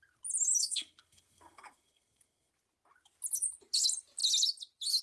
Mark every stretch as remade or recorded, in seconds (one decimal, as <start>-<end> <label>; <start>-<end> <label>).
0.0-0.6 recorded; 0.6-2.5 remade; 2.5-5.0 recorded

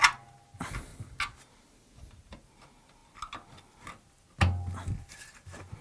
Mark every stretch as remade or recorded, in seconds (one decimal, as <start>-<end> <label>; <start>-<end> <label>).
0.0-5.8 recorded

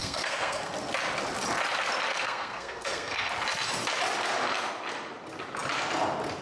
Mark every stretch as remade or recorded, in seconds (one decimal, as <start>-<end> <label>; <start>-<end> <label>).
0.0-0.7 remade; 0.7-2.1 recorded; 2.1-3.3 remade; 3.3-6.4 recorded

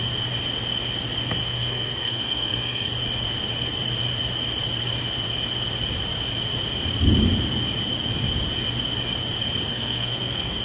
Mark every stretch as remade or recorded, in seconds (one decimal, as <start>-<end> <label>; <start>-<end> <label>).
0.0-1.4 recorded; 1.4-2.9 remade; 2.9-9.7 recorded; 9.7-10.6 remade

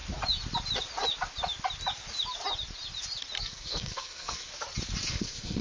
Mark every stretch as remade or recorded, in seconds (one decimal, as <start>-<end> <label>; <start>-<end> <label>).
0.0-3.4 recorded; 3.4-4.5 remade; 4.5-5.1 recorded; 5.1-5.6 remade

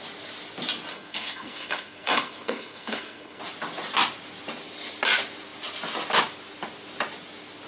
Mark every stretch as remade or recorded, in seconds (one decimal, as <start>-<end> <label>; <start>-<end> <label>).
0.0-0.9 recorded; 0.9-3.4 remade; 3.4-7.7 recorded

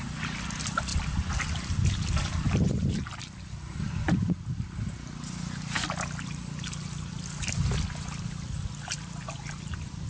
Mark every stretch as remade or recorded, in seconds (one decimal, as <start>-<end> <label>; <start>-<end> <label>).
0.0-10.1 recorded

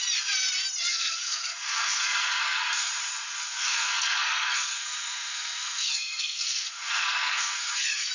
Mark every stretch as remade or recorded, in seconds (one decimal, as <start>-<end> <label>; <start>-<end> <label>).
0.0-0.9 recorded; 0.9-2.9 remade; 2.9-3.4 recorded; 3.4-8.1 remade